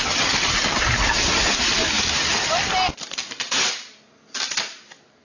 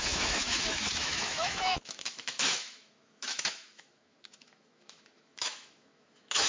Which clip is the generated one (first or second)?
second